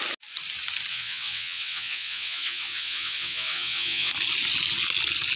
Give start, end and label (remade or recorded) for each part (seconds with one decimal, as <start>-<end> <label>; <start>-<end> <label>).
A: 0.0-0.9 recorded; 0.9-4.1 remade; 4.1-5.4 recorded